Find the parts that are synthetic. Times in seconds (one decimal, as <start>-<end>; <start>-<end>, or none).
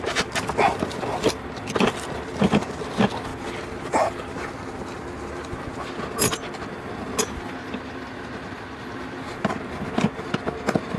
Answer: none